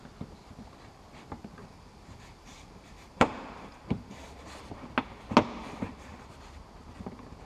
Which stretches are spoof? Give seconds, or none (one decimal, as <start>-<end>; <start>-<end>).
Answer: 1.6-4.4; 5.6-6.3